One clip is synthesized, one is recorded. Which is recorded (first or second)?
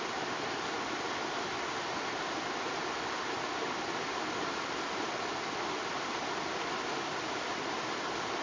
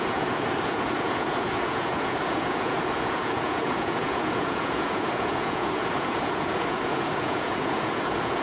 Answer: first